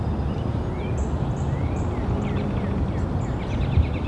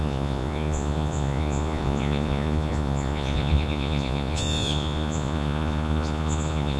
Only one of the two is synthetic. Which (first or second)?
second